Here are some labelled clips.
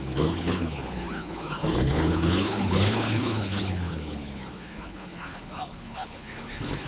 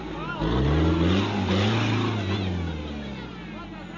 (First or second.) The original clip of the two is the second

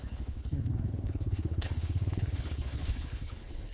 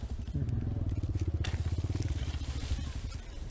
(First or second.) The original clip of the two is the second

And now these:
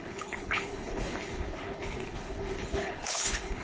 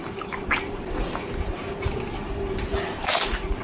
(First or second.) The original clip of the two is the second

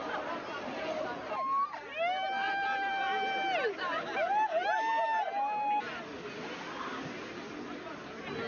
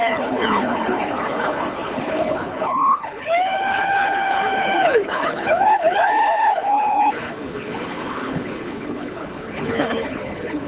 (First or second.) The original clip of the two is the first